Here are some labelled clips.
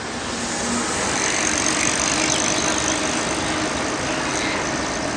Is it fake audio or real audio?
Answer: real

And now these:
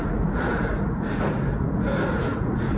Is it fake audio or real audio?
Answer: fake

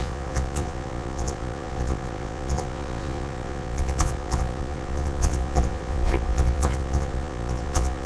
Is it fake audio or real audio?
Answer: fake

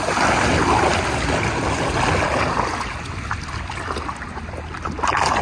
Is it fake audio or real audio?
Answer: real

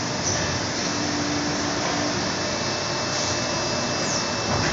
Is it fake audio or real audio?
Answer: real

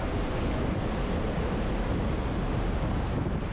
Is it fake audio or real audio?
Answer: real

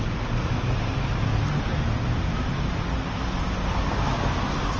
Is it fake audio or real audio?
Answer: real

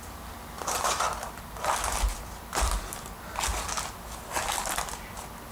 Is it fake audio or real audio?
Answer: real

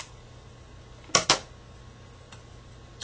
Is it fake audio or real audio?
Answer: real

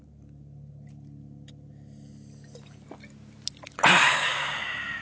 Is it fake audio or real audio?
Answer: real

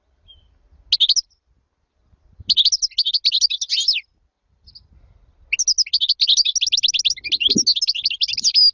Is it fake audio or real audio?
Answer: real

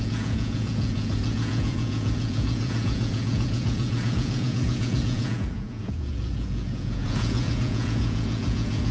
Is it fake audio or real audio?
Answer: fake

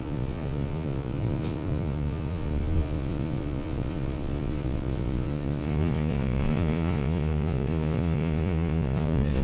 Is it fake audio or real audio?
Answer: fake